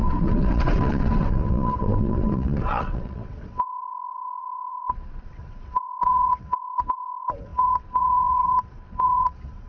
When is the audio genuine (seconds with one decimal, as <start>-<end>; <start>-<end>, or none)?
none